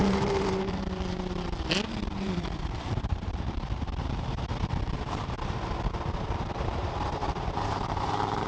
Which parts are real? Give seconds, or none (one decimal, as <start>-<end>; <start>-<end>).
none